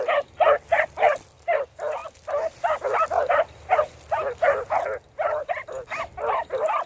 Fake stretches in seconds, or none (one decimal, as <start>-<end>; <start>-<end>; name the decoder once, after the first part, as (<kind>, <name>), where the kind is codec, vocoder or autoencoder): none